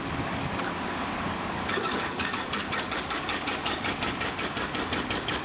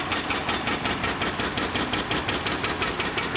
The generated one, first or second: first